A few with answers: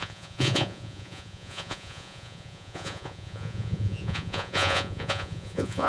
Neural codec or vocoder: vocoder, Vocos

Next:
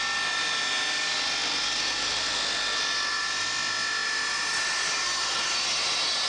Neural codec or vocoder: none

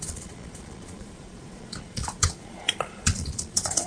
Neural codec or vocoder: vocoder, Vocos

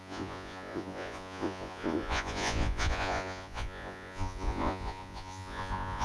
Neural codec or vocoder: vocoder, Vocos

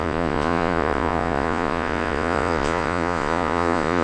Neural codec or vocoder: vocoder, Vocos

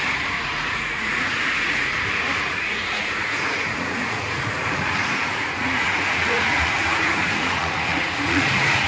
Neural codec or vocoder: vocoder, Vocos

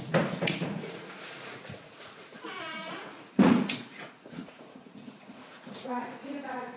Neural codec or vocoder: vocoder, Vocos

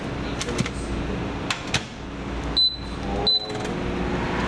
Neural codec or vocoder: none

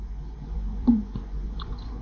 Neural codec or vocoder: vocoder, Vocos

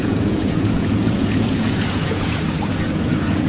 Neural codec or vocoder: vocoder, Vocos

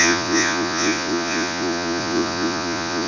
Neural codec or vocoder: vocoder, Vocos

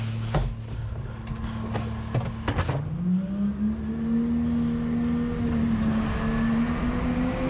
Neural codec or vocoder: none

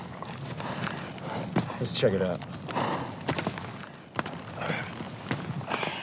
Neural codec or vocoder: none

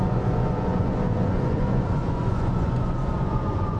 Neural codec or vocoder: vocoder, Vocos